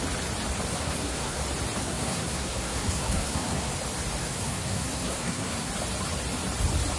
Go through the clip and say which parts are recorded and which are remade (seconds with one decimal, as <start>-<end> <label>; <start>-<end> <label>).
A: 0.0-0.7 recorded; 0.7-1.4 remade; 1.4-1.8 recorded; 1.8-3.7 remade; 3.7-4.2 recorded; 4.2-5.7 remade; 5.7-7.0 recorded